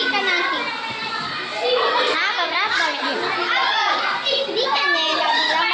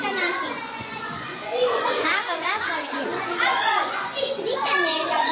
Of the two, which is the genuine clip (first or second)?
first